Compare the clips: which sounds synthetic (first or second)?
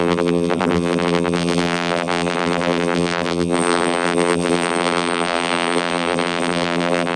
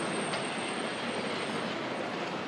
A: first